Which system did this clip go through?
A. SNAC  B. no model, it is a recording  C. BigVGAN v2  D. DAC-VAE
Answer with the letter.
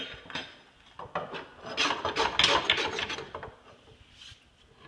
B